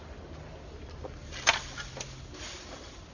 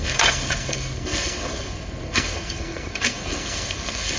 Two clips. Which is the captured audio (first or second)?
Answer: first